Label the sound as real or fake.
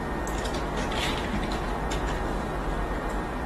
real